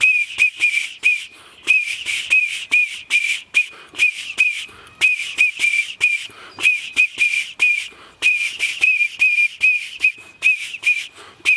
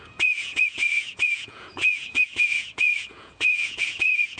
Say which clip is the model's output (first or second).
second